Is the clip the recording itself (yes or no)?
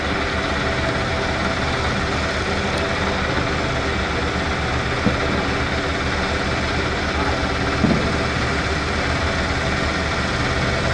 yes